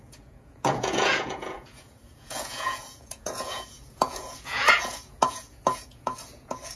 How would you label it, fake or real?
fake